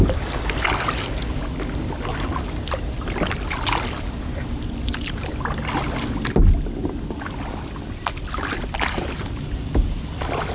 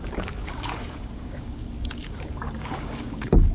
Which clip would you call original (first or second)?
first